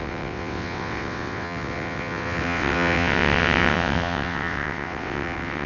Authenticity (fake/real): fake